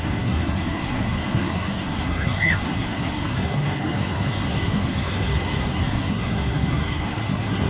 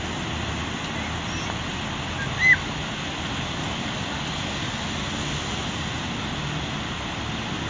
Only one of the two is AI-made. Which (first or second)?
first